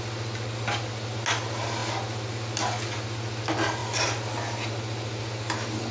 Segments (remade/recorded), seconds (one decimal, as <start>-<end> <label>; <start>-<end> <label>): 0.0-5.9 recorded